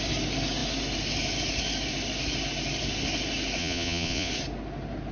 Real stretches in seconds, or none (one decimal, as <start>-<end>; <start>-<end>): 0.0-3.6; 4.3-5.1